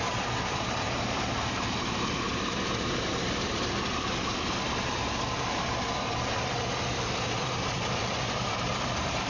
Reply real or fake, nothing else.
fake